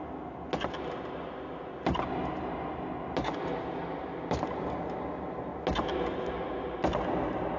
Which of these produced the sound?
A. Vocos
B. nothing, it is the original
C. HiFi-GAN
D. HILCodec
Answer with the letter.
B